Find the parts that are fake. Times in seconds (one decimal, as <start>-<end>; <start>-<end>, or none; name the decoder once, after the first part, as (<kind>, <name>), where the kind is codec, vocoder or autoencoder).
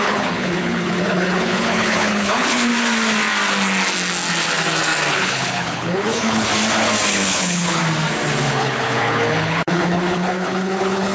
0.0-2.7 (codec, HILCodec); 5.1-6.5; 7.1-7.8; 8.5-11.1